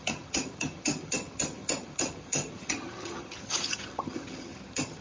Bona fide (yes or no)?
no